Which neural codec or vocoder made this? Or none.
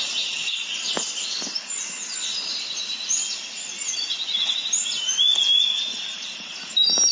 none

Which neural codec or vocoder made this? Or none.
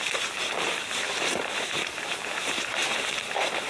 vocoder, BigVGAN v2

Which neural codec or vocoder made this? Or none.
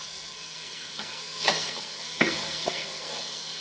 codec, SNAC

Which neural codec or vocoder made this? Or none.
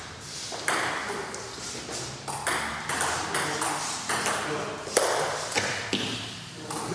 none